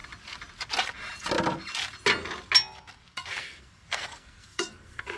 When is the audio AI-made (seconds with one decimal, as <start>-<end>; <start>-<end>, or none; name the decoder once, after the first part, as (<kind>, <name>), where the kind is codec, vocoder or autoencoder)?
3.1-5.2 (codec, SNAC)